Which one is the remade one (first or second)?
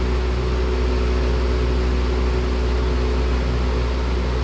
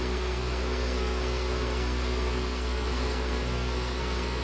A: second